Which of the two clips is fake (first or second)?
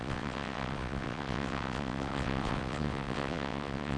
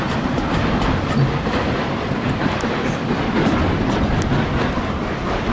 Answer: first